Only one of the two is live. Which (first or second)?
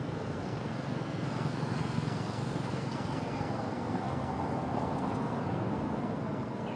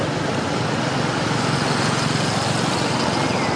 second